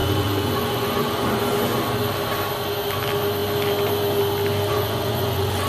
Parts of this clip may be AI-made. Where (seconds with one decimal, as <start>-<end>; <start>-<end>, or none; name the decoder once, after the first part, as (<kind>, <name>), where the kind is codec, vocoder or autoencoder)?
0.0-1.4 (vocoder, Vocos); 4.7-5.7